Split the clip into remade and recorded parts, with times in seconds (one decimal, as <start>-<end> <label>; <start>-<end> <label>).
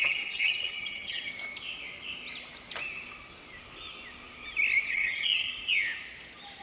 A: 0.0-1.3 remade; 1.3-4.9 recorded; 4.9-5.5 remade; 5.5-6.6 recorded